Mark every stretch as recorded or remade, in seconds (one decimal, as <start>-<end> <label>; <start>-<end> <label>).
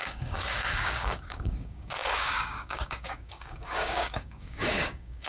0.0-5.3 remade